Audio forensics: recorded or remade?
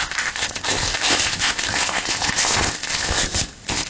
remade